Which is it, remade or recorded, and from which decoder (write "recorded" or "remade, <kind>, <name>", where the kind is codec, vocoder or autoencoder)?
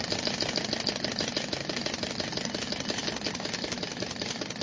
recorded